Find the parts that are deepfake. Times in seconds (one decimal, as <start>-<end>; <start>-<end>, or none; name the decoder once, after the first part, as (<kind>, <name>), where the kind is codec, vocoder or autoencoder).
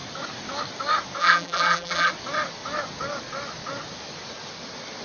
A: 1.2-2.1 (vocoder, BigVGAN v2)